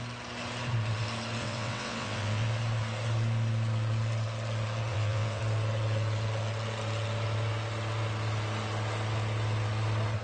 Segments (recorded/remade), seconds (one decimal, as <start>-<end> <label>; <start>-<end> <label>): 0.0-1.4 recorded; 1.4-2.5 remade; 2.5-4.9 recorded; 4.9-5.4 remade; 5.4-10.2 recorded